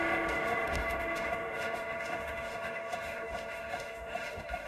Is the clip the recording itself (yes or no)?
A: no